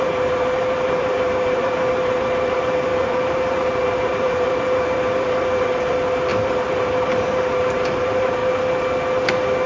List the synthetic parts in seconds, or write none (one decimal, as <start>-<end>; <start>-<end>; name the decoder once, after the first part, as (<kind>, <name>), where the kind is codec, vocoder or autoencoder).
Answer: 0.0-8.4 (vocoder, BigVGAN v2)

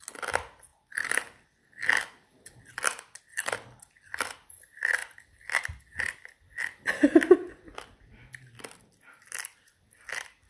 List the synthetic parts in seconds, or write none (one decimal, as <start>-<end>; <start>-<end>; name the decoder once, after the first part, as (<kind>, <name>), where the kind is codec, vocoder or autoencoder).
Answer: none

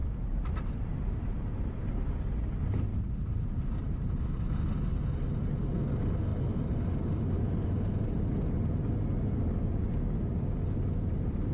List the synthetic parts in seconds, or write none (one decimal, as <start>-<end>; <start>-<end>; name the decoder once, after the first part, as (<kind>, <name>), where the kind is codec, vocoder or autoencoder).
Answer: 0.0-2.1 (vocoder, BigVGAN v2); 2.9-4.5